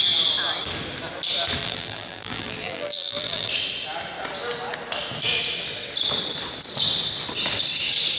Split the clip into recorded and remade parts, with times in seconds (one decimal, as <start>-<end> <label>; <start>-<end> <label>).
0.0-1.6 recorded; 1.6-3.5 remade; 3.5-8.2 recorded